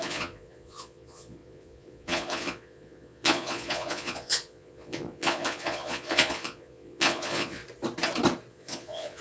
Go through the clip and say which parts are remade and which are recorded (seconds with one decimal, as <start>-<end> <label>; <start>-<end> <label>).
0.0-7.6 remade; 7.6-8.5 recorded; 8.5-9.2 remade